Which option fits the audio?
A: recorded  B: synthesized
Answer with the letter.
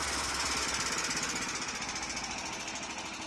A